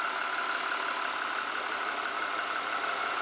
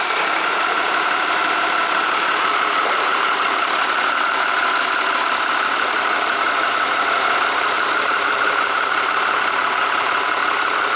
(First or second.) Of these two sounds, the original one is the first